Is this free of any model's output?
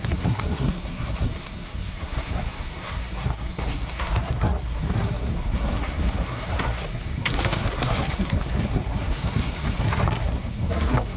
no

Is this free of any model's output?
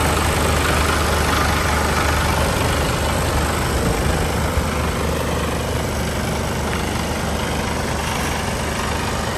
yes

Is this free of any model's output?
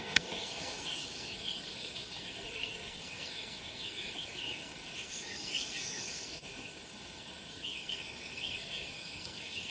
no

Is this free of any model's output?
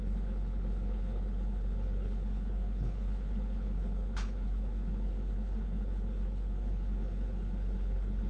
no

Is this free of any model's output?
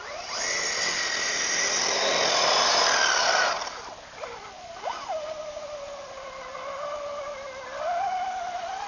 yes